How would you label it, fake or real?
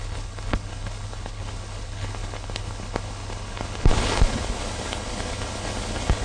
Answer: fake